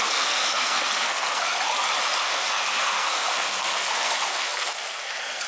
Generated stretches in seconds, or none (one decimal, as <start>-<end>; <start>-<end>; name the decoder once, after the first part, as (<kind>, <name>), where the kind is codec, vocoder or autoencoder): 0.0-1.6 (codec, SNAC); 2.2-5.5